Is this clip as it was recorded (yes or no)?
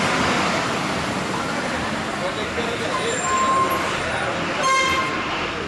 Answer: yes